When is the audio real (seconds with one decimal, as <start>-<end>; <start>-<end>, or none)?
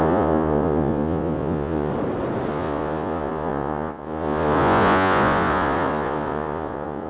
1.9-2.5